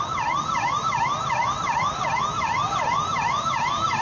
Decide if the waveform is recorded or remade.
recorded